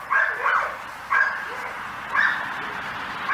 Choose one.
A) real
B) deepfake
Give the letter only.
A